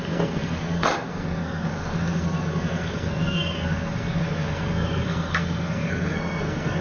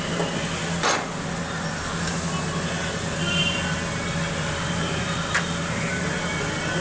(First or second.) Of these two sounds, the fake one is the first